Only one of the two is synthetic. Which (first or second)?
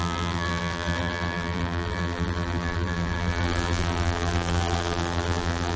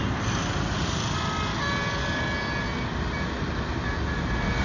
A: first